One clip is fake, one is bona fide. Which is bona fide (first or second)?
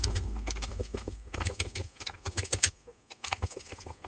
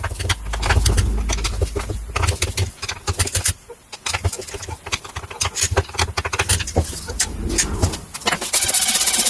second